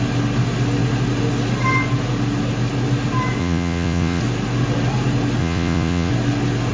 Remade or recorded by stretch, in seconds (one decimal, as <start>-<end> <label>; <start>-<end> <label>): 0.0-3.4 recorded; 3.4-4.2 remade; 4.2-5.4 recorded; 5.4-6.1 remade; 6.1-6.7 recorded